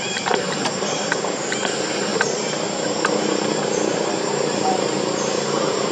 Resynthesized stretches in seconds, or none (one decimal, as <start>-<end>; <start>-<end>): 0.0-5.9